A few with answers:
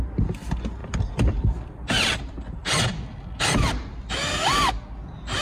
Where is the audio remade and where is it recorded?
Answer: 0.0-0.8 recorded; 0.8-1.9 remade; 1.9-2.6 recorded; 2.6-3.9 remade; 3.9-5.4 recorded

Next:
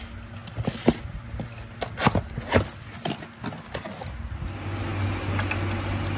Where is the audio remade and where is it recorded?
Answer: 0.0-6.2 recorded